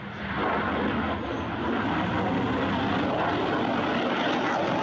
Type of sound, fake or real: real